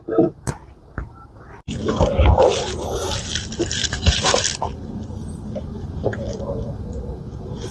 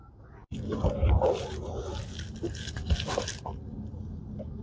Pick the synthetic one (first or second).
first